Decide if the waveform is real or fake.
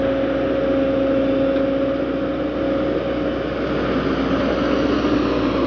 real